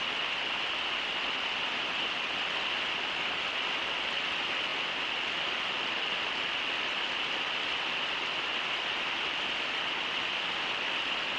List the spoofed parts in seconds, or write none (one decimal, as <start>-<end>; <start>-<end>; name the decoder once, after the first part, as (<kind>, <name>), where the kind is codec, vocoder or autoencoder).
none

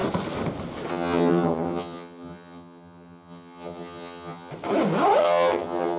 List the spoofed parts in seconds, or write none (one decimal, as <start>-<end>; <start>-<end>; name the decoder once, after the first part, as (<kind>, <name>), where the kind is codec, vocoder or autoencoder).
0.9-4.5 (vocoder, HiFi-GAN); 5.2-6.0

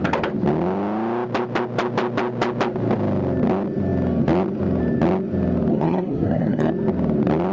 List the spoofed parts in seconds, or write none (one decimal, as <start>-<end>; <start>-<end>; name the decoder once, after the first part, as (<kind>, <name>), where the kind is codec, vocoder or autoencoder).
5.7-6.7 (codec, SNAC)

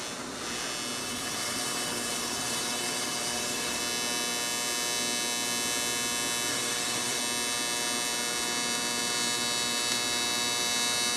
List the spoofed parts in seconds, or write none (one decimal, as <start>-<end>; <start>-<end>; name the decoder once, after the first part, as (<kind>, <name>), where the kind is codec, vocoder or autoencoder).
1.0-3.8 (codec, HILCodec); 6.5-7.2

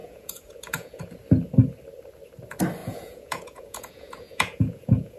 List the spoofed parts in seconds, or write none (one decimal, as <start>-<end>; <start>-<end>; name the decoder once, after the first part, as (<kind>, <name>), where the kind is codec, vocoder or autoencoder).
0.0-1.1 (vocoder, Vocos); 2.8-5.2

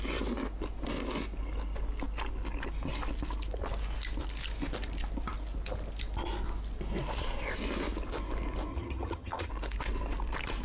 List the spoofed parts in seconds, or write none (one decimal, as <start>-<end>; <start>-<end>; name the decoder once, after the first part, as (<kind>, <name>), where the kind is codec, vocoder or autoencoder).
8.7-9.5 (vocoder, HiFi-GAN)

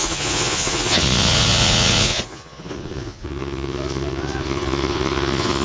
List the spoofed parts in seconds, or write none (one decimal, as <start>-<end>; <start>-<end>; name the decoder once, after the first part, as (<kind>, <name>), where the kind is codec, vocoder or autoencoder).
0.0-5.6 (vocoder, Vocos)